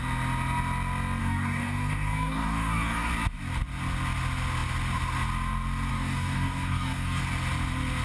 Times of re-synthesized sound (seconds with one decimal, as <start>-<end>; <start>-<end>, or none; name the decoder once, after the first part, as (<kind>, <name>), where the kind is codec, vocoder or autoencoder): 1.2-3.1 (codec, DAC); 5.9-7.2